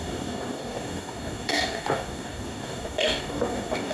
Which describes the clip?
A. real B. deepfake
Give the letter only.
B